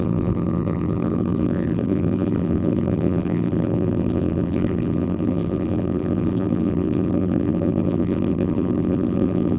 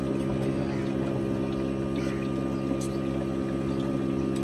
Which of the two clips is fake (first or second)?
first